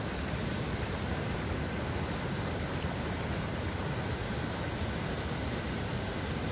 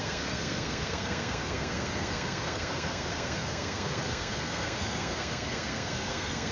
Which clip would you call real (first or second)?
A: first